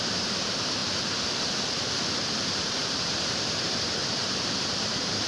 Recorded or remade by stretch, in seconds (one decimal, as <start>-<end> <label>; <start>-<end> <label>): 0.0-0.8 remade; 0.8-2.5 recorded; 2.5-5.3 remade